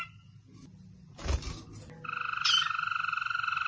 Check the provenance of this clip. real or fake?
real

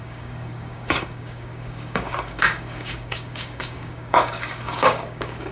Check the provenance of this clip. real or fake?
fake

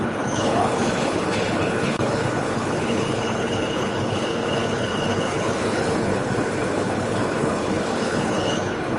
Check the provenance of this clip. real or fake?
fake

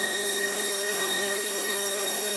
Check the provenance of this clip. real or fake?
fake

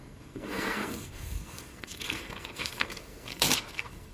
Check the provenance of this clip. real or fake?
fake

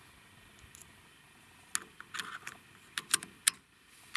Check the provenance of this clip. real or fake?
real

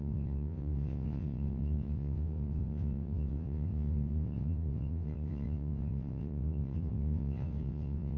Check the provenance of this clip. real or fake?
fake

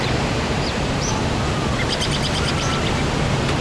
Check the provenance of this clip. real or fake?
fake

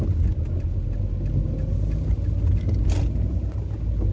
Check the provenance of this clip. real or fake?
real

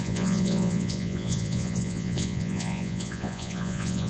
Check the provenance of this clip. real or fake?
fake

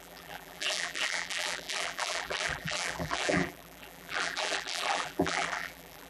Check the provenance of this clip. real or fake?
fake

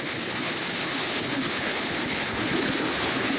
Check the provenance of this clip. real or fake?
fake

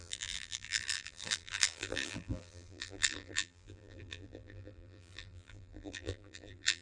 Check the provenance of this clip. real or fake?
fake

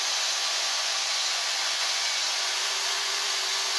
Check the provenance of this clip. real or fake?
fake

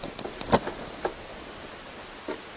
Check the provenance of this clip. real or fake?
real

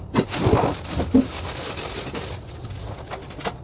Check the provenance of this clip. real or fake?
real